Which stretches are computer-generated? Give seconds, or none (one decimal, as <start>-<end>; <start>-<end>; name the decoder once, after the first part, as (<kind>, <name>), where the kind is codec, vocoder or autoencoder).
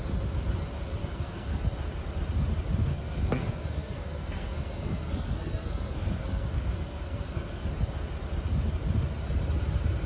1.0-1.6 (codec, SNAC); 2.9-7.7